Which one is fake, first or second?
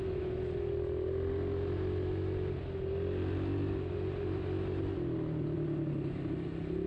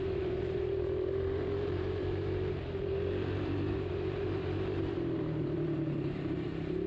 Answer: second